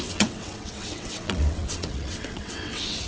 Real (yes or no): no